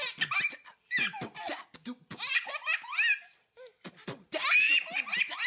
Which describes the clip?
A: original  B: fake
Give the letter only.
A